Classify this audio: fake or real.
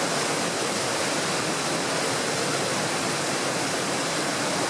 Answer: real